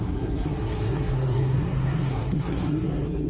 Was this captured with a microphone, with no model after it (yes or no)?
no